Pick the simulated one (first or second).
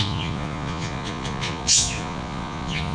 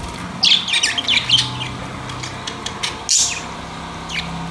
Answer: first